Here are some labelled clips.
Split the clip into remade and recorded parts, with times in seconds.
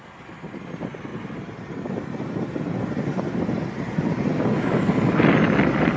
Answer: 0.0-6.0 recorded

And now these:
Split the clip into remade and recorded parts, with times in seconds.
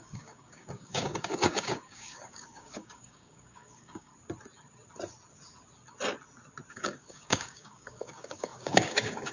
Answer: 0.0-4.1 remade; 4.1-6.7 recorded; 6.7-9.3 remade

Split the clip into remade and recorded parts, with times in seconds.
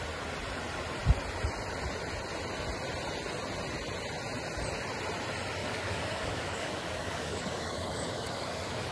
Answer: 0.0-5.6 recorded; 5.6-8.9 remade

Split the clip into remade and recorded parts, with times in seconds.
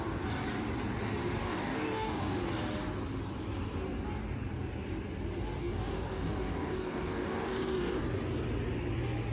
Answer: 0.0-1.4 recorded; 1.4-2.4 remade; 2.4-5.6 recorded; 5.6-8.0 remade; 8.0-9.3 recorded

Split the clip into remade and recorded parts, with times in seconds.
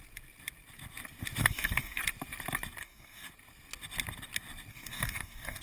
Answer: 0.0-1.4 recorded; 1.4-2.0 remade; 2.0-2.8 recorded; 2.8-3.3 remade; 3.3-4.7 recorded; 4.7-5.6 remade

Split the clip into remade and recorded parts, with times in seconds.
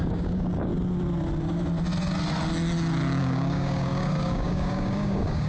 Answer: 0.0-0.7 remade; 0.7-3.2 recorded; 3.2-5.5 remade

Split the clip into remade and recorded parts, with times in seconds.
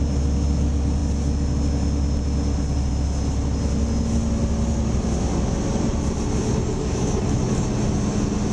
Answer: 0.0-6.7 recorded; 6.7-7.6 remade; 7.6-8.5 recorded